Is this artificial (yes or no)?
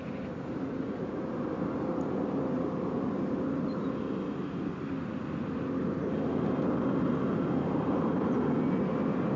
no